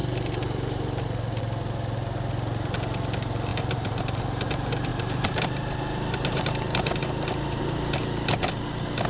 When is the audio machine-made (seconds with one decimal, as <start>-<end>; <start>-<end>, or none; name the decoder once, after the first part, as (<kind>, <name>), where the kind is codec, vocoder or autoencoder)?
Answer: 3.5-4.2 (vocoder, BigVGAN v2); 4.9-7.6